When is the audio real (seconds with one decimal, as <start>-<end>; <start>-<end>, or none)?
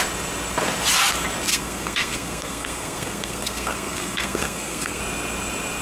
0.0-1.5; 5.0-5.8